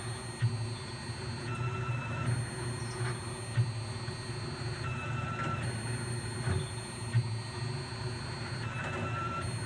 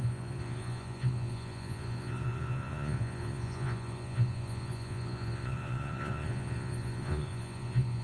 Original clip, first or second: first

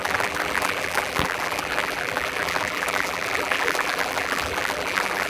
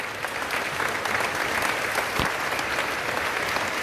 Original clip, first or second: second